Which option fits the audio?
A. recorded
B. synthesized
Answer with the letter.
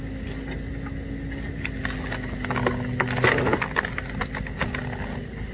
A